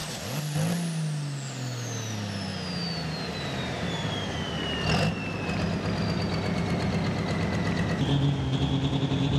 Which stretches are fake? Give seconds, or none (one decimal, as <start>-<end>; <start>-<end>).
none